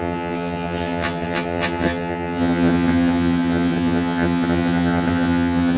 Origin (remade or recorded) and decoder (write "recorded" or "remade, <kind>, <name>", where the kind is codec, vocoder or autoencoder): remade, vocoder, HiFi-GAN